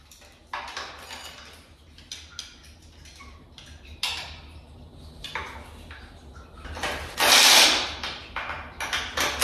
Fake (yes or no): no